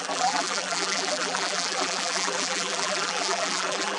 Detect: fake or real fake